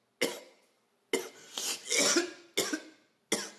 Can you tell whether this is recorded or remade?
recorded